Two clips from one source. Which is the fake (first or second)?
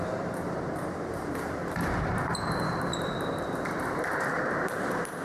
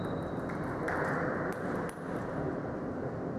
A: first